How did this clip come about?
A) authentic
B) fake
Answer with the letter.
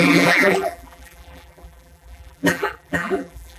B